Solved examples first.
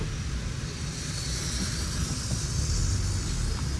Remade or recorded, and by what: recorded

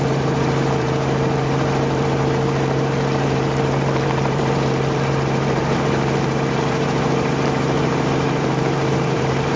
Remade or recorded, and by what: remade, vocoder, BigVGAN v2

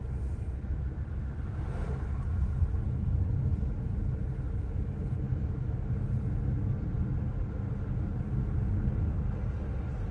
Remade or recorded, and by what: recorded